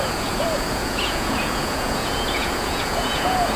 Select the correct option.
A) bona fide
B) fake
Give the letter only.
B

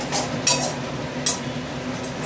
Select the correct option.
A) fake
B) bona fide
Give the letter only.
B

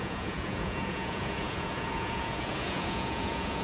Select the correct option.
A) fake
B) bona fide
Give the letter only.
A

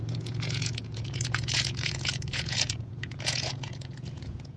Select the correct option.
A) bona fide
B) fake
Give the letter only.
B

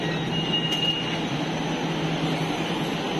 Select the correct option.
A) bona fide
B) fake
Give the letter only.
A